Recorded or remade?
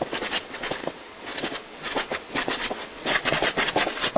remade